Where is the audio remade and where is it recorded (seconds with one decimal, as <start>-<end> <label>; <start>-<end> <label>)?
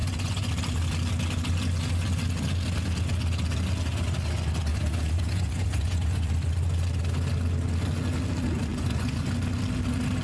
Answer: 0.0-0.5 remade; 0.5-4.7 recorded; 4.7-6.3 remade; 6.3-8.7 recorded; 8.7-9.3 remade; 9.3-10.2 recorded